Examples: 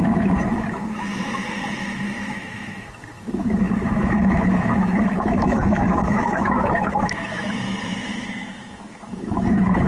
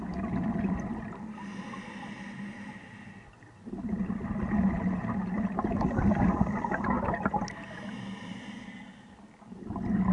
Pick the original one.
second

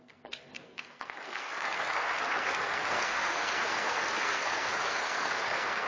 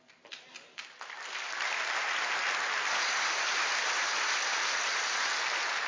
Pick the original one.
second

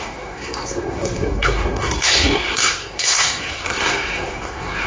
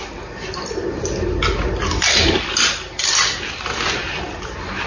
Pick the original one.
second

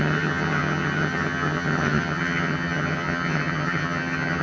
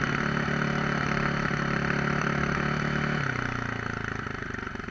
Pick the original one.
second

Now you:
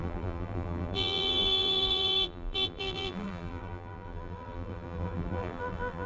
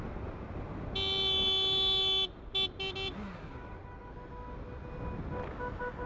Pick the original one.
second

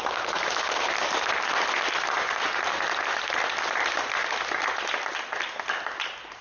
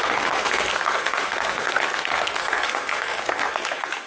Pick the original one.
first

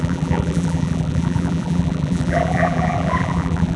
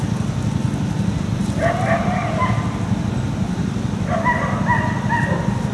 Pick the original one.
second